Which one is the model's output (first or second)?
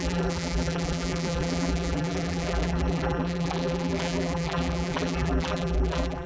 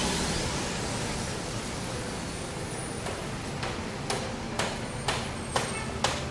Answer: first